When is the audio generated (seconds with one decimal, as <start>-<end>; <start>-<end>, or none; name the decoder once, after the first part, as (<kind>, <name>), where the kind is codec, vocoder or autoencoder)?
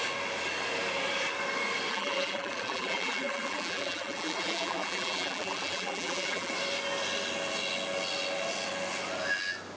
1.9-6.5 (vocoder, BigVGAN v2)